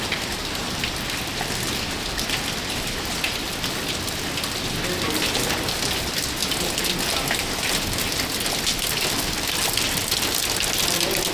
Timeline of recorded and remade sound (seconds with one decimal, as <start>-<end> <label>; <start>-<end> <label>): 0.0-11.3 recorded